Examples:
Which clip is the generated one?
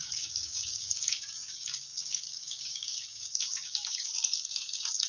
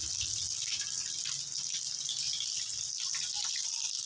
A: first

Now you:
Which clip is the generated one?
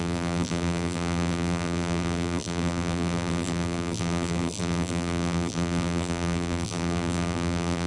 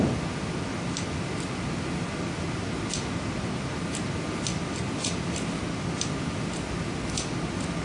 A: first